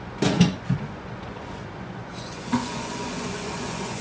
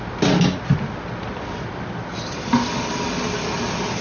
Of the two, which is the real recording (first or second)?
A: second